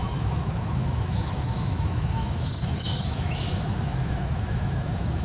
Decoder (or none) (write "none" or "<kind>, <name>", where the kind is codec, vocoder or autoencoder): autoencoder, DAC-VAE